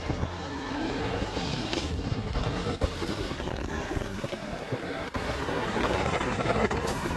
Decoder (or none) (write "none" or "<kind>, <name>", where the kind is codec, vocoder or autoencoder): codec, SNAC